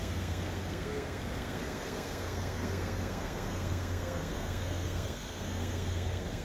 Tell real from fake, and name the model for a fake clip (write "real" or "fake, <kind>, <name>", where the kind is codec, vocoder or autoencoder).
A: fake, codec, SNAC